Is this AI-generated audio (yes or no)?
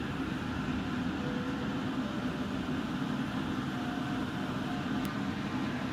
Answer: no